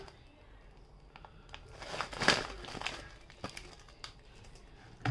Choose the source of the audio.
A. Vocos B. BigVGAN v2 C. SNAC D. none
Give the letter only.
D